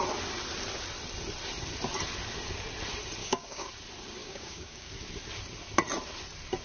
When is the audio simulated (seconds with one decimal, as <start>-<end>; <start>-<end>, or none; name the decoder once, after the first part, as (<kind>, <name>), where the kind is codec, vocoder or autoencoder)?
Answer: 3.2-3.7 (codec, DAC); 4.2-4.9